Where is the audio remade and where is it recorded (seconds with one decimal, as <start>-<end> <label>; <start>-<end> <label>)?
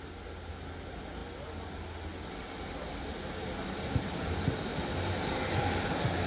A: 0.0-6.3 recorded